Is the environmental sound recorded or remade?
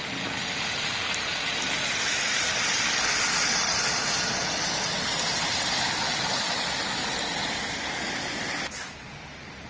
recorded